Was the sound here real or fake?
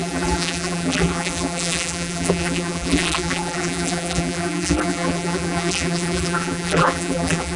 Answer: fake